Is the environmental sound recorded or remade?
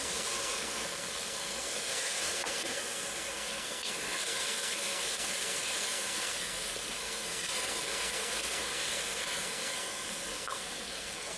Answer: remade